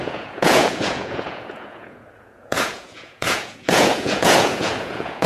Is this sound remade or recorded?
remade